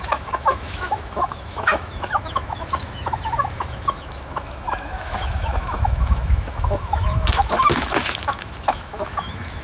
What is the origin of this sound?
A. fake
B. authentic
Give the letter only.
A